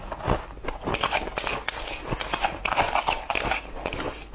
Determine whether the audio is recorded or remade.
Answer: recorded